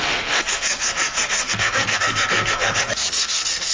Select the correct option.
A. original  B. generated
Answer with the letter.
B